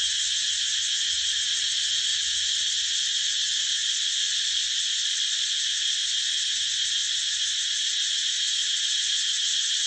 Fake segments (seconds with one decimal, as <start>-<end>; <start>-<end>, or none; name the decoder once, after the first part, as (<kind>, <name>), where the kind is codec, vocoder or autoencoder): 3.8-5.5 (vocoder, Vocos)